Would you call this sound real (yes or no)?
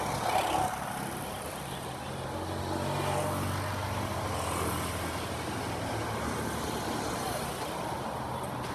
yes